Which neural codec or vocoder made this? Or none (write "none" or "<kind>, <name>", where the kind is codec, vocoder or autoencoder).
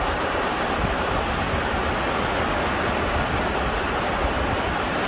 none